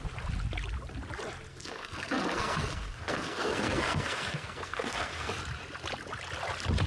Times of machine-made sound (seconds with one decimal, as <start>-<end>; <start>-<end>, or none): 1.5-5.3